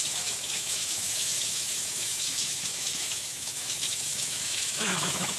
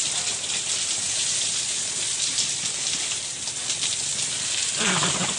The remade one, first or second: first